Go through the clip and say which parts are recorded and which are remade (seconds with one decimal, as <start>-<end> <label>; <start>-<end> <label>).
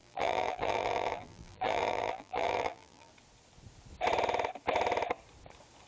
0.0-3.1 remade; 3.1-5.9 recorded